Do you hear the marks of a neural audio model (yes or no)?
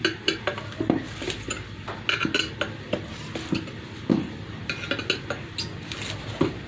no